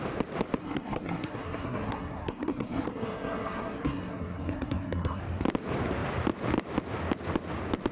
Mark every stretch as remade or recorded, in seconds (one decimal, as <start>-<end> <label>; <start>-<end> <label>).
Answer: 0.0-0.6 recorded; 0.6-5.2 remade; 5.2-7.9 recorded